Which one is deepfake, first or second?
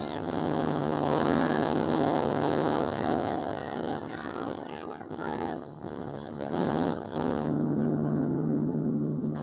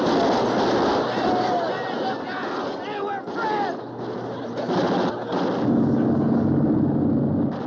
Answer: first